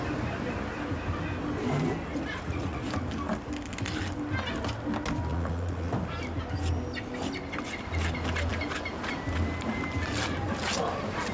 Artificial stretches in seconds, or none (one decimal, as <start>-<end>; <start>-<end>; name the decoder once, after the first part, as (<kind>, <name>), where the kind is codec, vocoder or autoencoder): 2.1-2.9 (vocoder, Vocos); 5.3-5.9